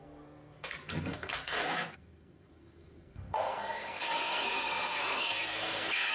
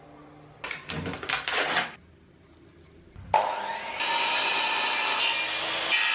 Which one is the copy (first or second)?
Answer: first